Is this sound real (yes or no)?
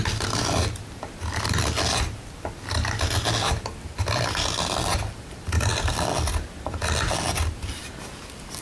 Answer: yes